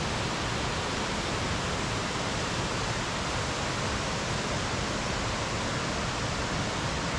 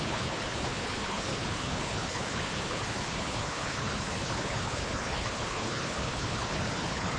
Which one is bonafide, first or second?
first